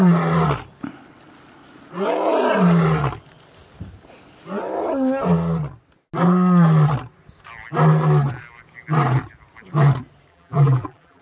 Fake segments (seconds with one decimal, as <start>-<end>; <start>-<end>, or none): 10.3-11.2